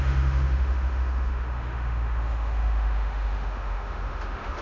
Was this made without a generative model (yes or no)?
no